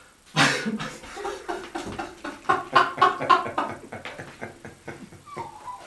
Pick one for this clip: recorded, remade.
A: recorded